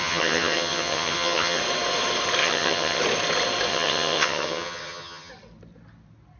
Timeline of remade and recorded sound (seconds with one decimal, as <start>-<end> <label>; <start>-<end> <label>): 0.0-1.6 remade; 1.6-2.4 recorded; 2.4-3.0 remade; 3.0-3.7 recorded; 3.7-5.3 remade; 5.3-6.4 recorded